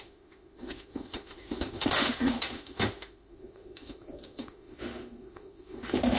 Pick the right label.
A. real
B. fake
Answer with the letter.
B